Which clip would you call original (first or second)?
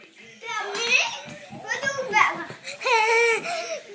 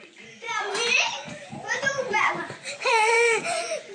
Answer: first